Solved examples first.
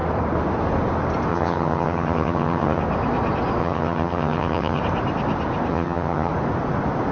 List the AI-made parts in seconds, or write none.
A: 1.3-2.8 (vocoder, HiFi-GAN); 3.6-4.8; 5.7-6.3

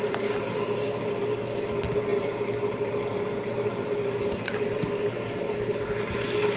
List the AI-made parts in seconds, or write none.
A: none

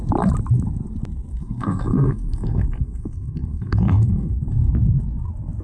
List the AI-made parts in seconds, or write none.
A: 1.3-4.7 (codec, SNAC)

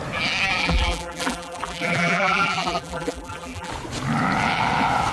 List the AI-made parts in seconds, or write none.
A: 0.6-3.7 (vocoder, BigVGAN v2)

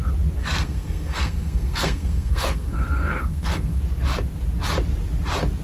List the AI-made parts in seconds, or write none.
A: 0.4-3.8 (codec, SNAC)